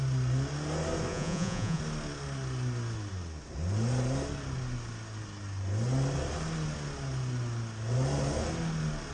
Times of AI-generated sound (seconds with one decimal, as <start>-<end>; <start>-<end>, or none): 1.1-1.8